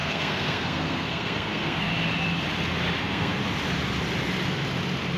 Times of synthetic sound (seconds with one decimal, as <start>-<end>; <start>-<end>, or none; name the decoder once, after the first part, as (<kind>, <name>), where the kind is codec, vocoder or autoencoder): 0.0-1.9 (codec, SNAC); 3.0-3.4